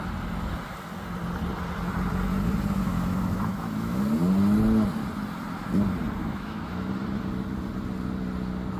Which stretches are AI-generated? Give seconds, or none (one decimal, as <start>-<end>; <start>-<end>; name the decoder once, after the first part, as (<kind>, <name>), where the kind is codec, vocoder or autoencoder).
2.9-4.0 (autoencoder, DAC-VAE); 6.2-6.9